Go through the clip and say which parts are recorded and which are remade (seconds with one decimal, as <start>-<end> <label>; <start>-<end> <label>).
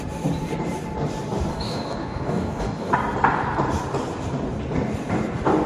0.0-1.5 recorded; 1.5-2.9 remade; 2.9-5.7 recorded